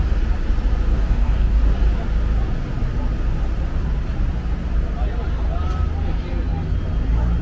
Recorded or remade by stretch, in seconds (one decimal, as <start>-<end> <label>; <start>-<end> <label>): 0.0-0.9 recorded; 0.9-1.6 remade; 1.6-7.4 recorded